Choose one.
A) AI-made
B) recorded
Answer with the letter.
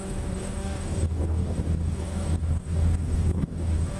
A